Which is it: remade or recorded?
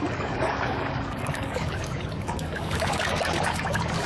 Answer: remade